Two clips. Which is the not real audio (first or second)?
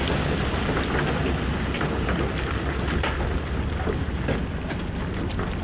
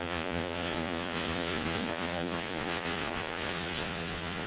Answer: second